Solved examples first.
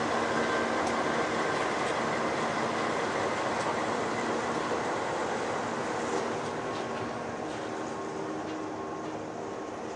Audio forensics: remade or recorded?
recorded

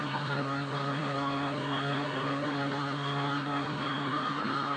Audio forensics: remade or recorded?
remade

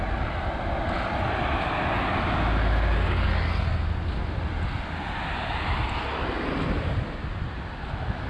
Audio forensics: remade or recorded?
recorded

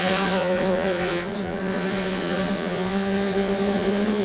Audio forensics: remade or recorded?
remade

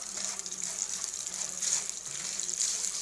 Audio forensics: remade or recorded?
remade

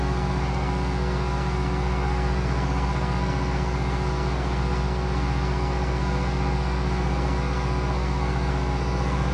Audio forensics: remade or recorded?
remade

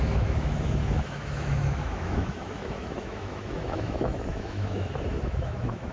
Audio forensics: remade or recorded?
remade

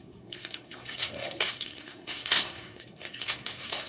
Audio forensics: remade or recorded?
remade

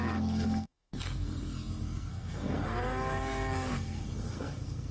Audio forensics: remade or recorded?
remade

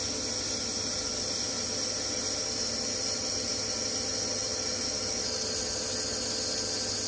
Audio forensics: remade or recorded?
recorded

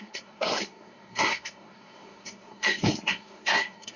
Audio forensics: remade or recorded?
remade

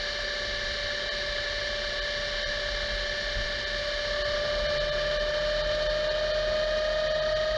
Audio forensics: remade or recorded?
recorded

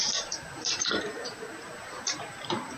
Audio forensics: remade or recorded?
remade